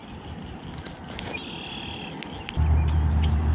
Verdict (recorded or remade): recorded